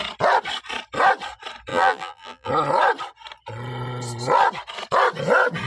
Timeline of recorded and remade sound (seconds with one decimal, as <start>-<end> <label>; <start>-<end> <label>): 0.0-1.7 recorded; 1.7-2.5 remade; 2.5-5.7 recorded